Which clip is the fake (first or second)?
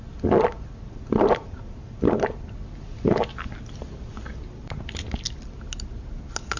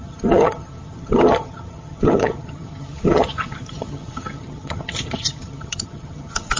second